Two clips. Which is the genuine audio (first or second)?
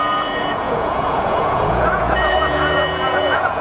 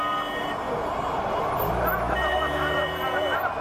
second